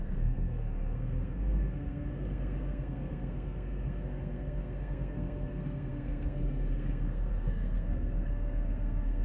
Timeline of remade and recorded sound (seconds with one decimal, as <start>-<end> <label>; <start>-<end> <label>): 0.0-9.2 remade